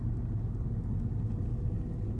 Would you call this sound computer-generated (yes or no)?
no